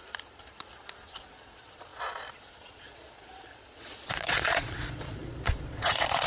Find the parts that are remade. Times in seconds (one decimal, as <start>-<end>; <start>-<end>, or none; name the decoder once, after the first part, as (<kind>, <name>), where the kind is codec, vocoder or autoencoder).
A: 0.0-6.3 (vocoder, Vocos)